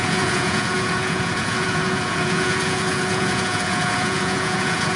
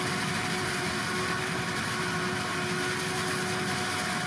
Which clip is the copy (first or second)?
first